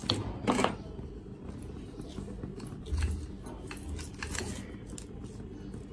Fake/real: real